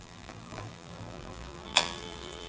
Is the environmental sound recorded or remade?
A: remade